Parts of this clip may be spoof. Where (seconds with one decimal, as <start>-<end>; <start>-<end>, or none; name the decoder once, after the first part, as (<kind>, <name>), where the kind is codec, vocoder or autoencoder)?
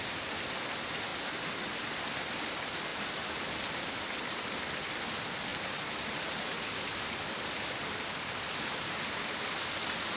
5.5-6.6 (vocoder, BigVGAN v2)